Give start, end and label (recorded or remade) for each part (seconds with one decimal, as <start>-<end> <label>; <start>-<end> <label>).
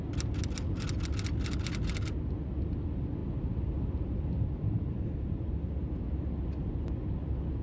0.0-7.6 recorded